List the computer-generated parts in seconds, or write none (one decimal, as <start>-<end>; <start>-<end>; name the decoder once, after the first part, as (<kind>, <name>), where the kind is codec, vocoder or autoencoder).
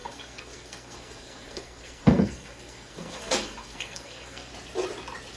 0.0-4.5 (codec, SNAC)